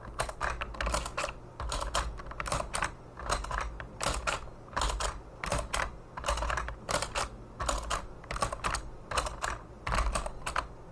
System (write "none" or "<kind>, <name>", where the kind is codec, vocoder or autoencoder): none